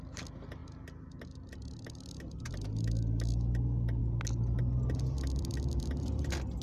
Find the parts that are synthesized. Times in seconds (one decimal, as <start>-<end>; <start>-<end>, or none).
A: none